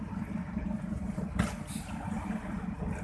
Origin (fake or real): real